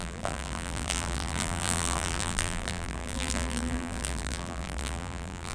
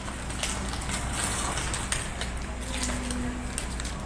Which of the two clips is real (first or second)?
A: second